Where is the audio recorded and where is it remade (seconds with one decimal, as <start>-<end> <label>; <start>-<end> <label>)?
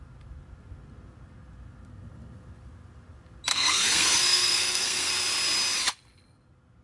0.0-3.5 recorded; 3.5-5.1 remade; 5.1-6.8 recorded